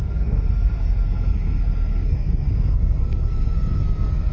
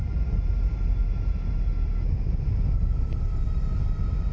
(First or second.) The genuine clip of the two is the second